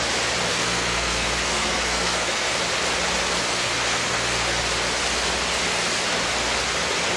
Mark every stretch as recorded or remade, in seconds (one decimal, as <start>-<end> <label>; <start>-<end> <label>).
0.0-0.5 recorded; 0.5-2.5 remade; 2.5-3.5 recorded; 3.5-4.6 remade; 4.6-7.2 recorded